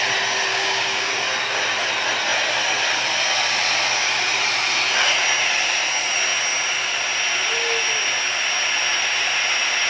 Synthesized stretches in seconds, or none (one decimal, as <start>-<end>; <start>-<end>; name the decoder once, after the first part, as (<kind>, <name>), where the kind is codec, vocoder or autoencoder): 0.5-1.1 (codec, DAC)